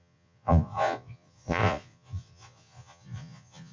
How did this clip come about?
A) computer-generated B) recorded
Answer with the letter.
A